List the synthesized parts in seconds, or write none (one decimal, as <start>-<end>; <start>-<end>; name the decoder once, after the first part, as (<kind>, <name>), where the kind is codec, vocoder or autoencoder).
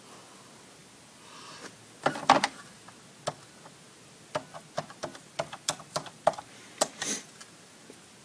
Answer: 0.8-2.9 (vocoder, BigVGAN v2); 5.0-6.9